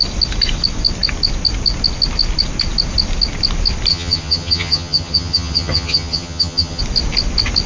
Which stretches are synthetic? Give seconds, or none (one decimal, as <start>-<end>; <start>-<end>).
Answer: 3.9-6.8